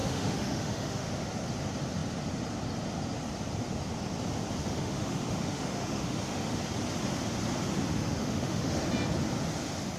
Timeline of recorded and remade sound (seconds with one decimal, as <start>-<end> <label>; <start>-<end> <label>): 0.0-1.1 remade; 1.1-4.6 recorded; 4.6-6.6 remade; 6.6-7.9 recorded; 7.9-8.8 remade; 8.8-10.0 recorded